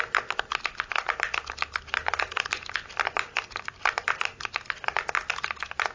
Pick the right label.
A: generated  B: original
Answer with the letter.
B